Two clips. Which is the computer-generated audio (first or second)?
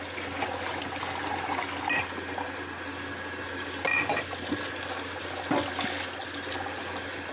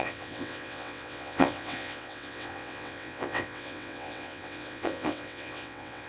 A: second